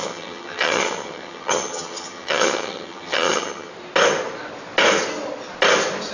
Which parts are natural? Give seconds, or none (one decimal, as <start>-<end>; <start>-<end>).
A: 3.7-6.1